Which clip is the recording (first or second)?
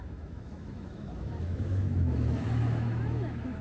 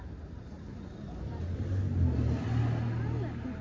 second